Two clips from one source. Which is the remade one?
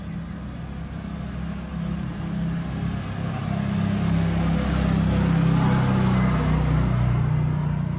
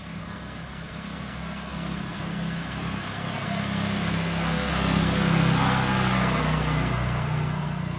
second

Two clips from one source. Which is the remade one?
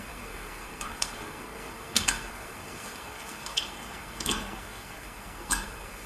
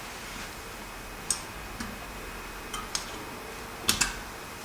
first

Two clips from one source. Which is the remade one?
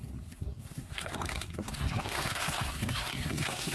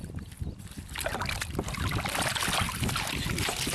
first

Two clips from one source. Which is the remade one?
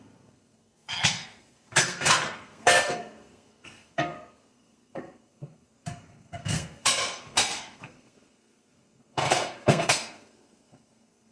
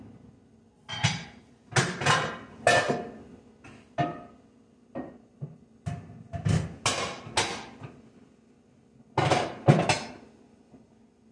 first